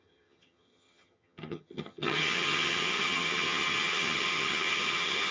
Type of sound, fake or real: fake